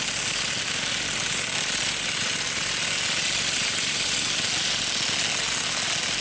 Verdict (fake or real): real